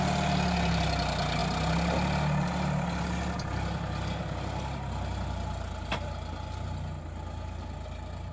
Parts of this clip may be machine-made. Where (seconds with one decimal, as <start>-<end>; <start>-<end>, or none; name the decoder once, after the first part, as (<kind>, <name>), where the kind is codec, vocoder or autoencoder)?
none